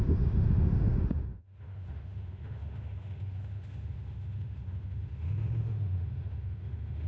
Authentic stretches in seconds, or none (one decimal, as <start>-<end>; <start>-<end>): none